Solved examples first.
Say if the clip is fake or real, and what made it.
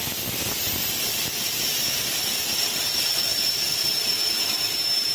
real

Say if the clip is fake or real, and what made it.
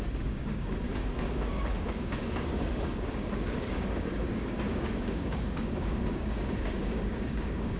fake, codec, DAC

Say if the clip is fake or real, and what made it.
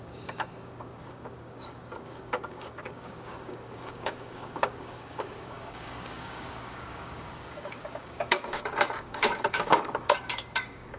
fake, codec, DAC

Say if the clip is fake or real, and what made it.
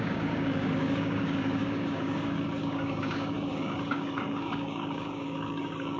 fake, codec, DAC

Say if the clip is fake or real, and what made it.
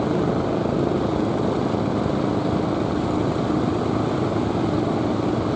real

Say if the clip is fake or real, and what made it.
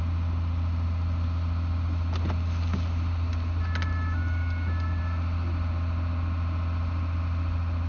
real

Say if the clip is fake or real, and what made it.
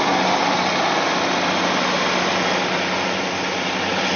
real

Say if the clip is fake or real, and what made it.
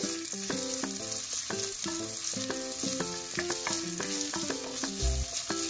real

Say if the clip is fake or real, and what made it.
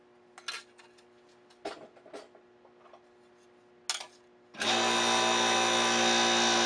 real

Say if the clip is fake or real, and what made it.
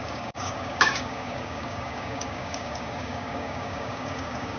fake, codec, DAC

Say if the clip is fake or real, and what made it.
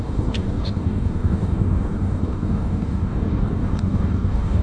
fake, codec, DAC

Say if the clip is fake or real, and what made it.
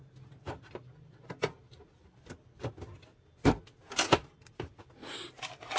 real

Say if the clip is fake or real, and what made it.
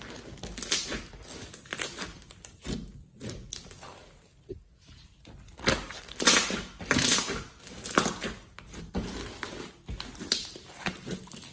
real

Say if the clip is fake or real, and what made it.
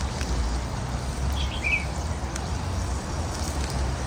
real